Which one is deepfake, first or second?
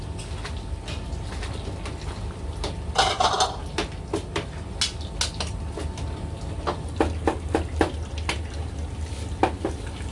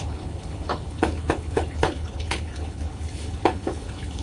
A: second